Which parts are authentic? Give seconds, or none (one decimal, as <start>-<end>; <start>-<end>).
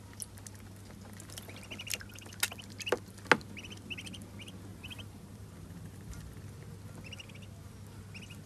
0.0-4.7; 6.2-8.5